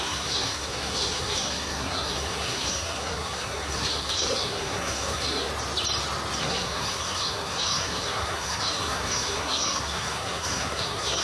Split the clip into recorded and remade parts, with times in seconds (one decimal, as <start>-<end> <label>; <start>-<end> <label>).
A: 0.0-5.5 remade; 5.5-6.4 recorded; 6.4-11.2 remade